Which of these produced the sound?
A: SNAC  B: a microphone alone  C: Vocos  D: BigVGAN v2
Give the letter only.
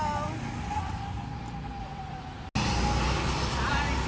B